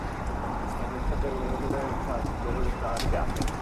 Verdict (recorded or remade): remade